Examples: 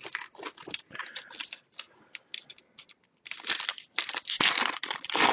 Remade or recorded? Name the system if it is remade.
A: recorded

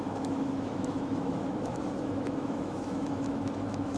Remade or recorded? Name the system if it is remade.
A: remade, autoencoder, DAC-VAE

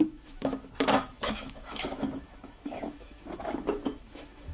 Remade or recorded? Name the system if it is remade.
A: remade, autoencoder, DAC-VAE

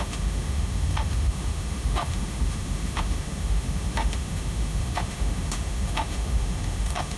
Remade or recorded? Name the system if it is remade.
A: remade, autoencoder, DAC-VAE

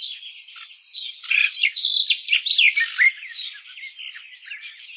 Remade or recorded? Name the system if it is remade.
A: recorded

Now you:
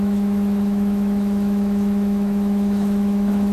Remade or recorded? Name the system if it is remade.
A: remade, autoencoder, DAC-VAE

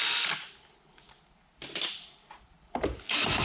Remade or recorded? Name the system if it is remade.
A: recorded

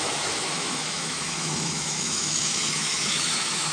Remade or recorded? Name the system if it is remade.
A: remade, autoencoder, DAC-VAE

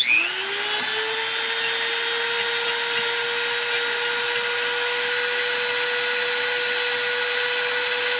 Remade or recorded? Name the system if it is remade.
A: recorded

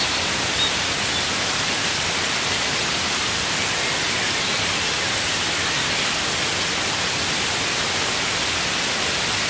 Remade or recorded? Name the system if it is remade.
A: recorded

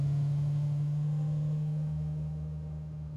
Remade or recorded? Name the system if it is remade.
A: remade, autoencoder, DAC-VAE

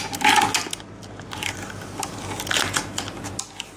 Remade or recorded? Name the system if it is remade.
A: recorded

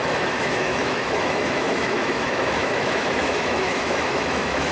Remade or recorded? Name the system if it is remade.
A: remade, autoencoder, DAC-VAE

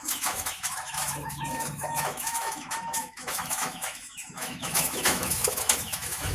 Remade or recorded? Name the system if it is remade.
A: remade, autoencoder, DAC-VAE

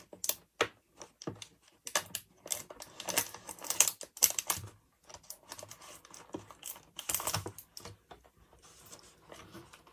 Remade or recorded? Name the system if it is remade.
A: recorded